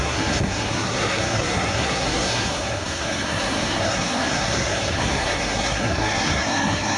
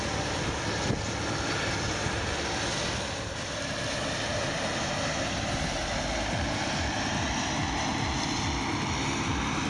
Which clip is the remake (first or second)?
first